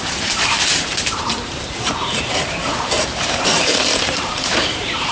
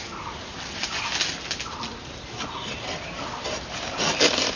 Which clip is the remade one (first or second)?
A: first